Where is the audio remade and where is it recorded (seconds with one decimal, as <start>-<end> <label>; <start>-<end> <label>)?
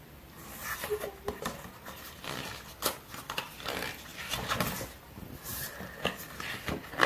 0.0-4.1 recorded; 4.1-5.4 remade; 5.4-7.1 recorded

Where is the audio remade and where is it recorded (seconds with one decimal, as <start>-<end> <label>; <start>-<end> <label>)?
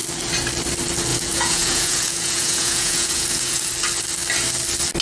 0.0-1.1 recorded; 1.1-3.7 remade; 3.7-5.0 recorded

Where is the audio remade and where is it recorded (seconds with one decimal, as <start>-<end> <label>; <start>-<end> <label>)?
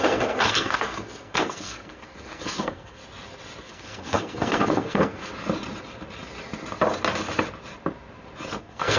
0.0-3.0 remade; 3.0-3.6 recorded; 3.6-5.3 remade; 5.3-8.6 recorded; 8.6-9.0 remade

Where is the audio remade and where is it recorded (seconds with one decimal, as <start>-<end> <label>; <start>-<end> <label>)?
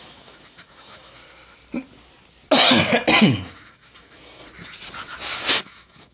0.0-1.2 remade; 1.2-3.2 recorded; 3.2-4.4 remade; 4.4-5.5 recorded; 5.5-6.1 remade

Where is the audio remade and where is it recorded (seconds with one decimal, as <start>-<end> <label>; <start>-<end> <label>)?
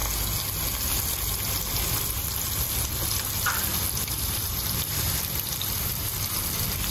0.0-4.1 recorded; 4.1-6.9 remade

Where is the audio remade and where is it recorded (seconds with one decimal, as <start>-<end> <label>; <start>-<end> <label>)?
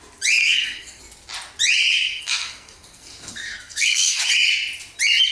0.0-0.4 recorded; 0.4-1.0 remade; 1.0-2.0 recorded; 2.0-4.2 remade; 4.2-5.3 recorded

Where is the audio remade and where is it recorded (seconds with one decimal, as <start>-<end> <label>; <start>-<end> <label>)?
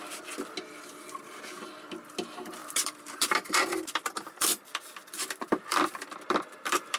0.0-2.6 recorded; 2.6-7.0 remade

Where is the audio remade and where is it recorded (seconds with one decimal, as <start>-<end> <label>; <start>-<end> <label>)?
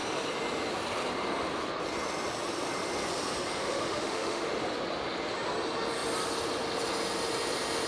0.0-3.6 recorded; 3.6-4.5 remade; 4.5-7.9 recorded